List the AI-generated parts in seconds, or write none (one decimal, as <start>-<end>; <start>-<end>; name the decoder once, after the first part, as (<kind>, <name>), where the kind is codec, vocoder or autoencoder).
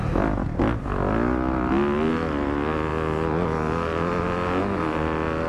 none